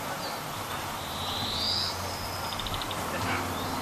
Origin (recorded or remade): remade